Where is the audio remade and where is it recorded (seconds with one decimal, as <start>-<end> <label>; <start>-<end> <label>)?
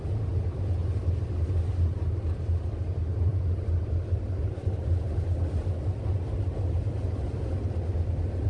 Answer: 0.0-8.5 recorded